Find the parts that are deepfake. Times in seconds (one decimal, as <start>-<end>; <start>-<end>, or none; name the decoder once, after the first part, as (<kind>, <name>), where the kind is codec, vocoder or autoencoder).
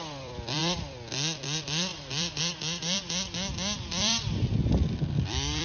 0.0-3.0 (vocoder, BigVGAN v2); 3.9-5.6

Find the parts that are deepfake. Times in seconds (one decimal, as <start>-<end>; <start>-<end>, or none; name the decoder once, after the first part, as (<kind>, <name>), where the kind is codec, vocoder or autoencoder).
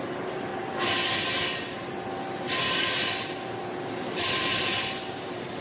0.0-0.5 (vocoder, BigVGAN v2); 3.9-5.6